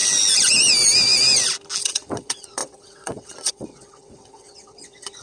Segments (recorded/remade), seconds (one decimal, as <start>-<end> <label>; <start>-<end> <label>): 0.0-1.8 recorded; 1.8-5.2 remade